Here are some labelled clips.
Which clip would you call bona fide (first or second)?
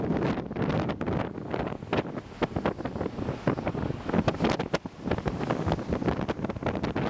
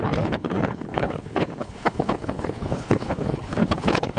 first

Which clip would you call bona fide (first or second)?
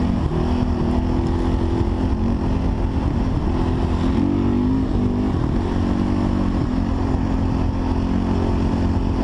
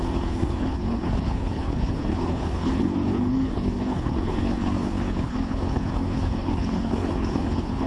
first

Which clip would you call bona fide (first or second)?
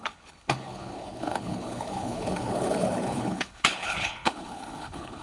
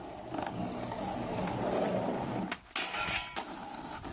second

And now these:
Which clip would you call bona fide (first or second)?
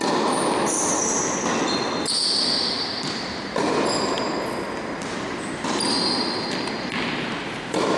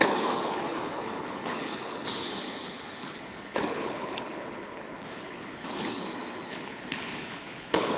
first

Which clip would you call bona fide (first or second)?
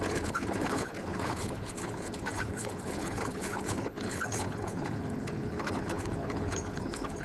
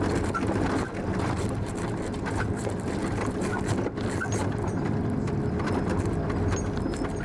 second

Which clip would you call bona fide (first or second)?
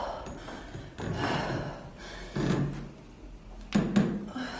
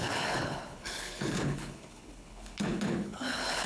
first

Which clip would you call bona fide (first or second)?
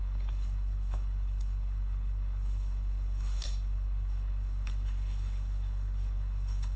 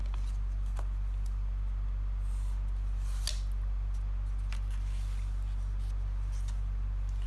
second